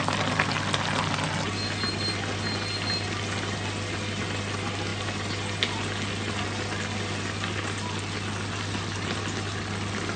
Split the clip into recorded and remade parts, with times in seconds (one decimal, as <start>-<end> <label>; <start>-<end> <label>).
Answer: 0.0-10.2 recorded